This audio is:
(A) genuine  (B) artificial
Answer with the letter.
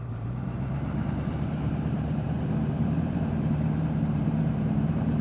B